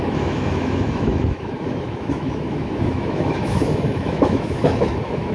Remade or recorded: remade